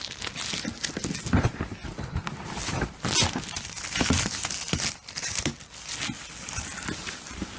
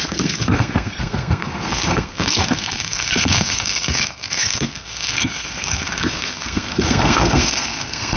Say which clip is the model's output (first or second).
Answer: second